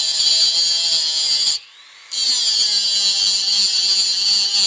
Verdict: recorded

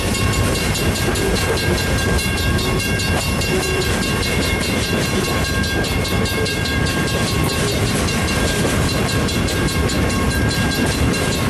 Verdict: remade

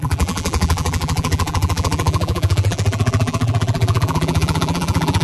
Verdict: remade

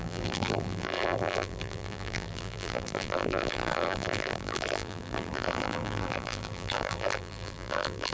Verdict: remade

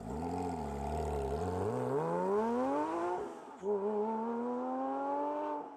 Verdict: recorded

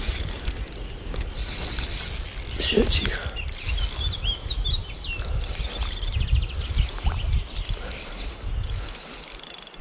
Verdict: recorded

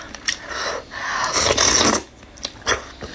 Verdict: recorded